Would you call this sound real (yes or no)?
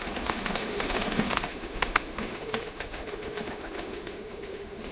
no